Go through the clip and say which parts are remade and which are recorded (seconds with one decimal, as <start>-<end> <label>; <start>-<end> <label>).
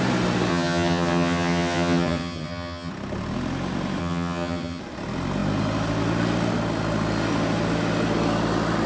0.0-0.5 recorded; 0.5-2.9 remade; 2.9-4.0 recorded; 4.0-4.8 remade; 4.8-8.9 recorded